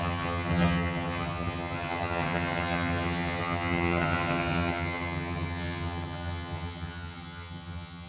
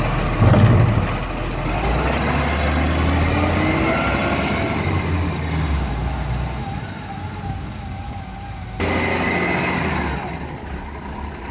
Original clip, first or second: second